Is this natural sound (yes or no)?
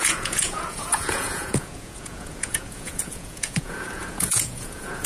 no